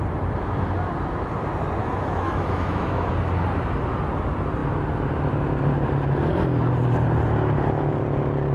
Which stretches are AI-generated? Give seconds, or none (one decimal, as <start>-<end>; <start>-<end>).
1.8-3.1

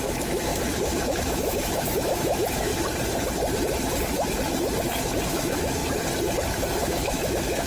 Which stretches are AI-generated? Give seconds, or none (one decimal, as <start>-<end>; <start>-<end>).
0.0-2.7; 5.3-5.8; 6.8-7.7

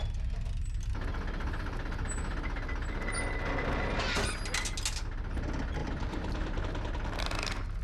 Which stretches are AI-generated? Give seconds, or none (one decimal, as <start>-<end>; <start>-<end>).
5.8-6.6

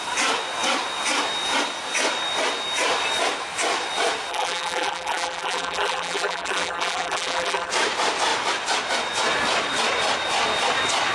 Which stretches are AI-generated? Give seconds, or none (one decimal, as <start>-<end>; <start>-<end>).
4.3-7.7

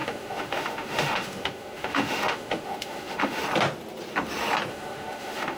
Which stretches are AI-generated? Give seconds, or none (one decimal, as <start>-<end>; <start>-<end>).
0.0-3.4; 4.7-5.6

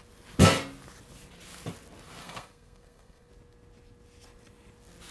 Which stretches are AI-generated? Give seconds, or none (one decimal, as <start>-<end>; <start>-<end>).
2.2-3.3

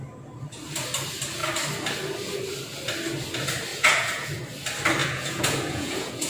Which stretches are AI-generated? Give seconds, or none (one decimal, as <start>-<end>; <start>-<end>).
3.7-4.4; 5.0-6.3